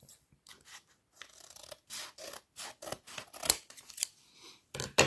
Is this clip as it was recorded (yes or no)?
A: no